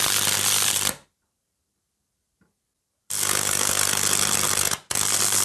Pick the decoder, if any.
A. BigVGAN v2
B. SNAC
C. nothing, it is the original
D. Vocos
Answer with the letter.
A